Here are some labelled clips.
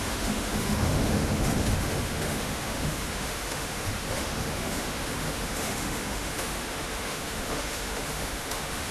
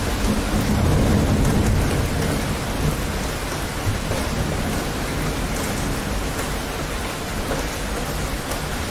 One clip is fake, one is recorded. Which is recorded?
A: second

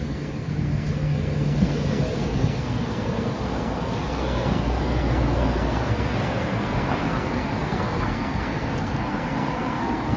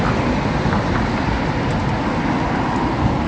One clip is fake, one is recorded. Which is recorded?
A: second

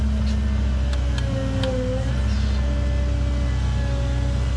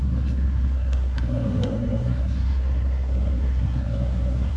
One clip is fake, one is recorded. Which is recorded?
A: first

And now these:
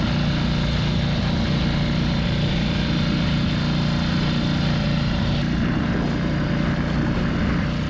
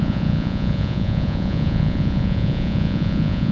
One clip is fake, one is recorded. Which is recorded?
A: first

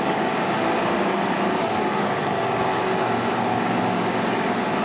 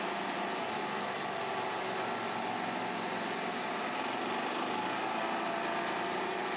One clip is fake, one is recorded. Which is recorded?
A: second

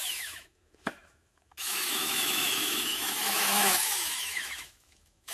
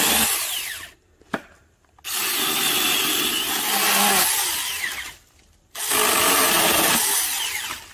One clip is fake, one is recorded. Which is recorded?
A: second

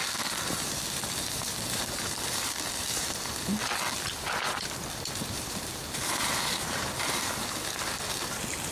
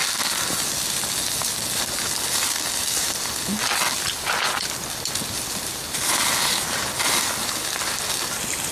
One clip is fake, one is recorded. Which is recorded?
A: second